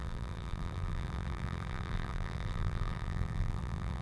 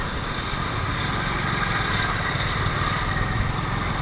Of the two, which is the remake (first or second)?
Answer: first